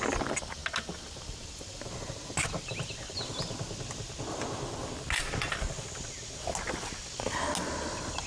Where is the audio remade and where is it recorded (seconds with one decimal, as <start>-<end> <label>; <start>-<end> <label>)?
0.0-8.3 recorded